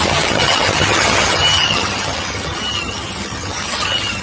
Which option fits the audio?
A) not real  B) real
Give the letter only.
A